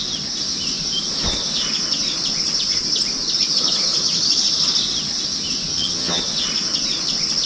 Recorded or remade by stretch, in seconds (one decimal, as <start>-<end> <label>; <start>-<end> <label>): 0.0-5.7 recorded; 5.7-6.2 remade; 6.2-7.5 recorded